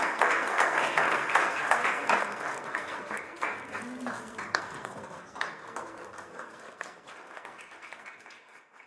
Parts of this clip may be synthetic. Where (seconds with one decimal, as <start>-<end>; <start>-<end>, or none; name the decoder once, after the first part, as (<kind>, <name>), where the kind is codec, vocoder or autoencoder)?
0.0-8.9 (codec, SNAC)